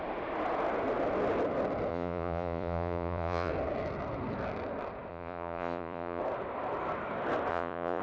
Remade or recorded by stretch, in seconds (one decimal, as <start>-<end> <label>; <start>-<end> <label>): 0.0-1.9 recorded; 1.9-3.5 remade; 3.5-5.1 recorded; 5.1-6.2 remade; 6.2-7.5 recorded; 7.5-8.0 remade